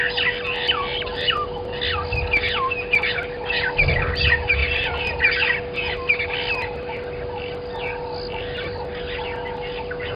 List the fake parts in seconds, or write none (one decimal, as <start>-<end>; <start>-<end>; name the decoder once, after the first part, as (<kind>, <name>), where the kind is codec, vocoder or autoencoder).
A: 4.6-5.3 (vocoder, BigVGAN v2)